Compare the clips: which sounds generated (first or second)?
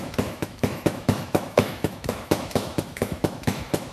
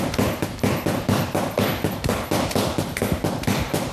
first